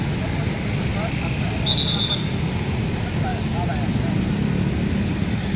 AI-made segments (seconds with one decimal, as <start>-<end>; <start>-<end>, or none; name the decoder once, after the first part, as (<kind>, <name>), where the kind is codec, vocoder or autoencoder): none